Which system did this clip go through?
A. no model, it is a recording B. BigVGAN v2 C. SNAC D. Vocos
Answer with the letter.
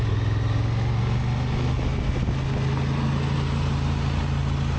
A